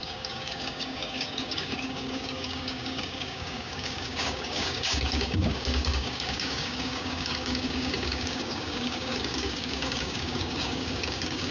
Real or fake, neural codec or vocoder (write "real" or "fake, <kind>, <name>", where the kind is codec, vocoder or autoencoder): fake, codec, DAC